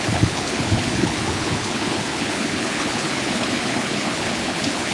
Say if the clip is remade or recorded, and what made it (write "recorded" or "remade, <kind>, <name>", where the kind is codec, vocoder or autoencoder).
remade, codec, HILCodec